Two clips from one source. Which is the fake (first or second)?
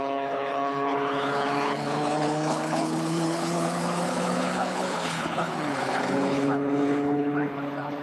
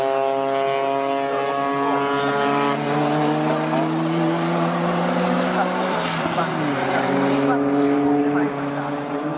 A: first